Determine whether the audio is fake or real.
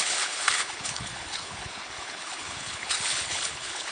fake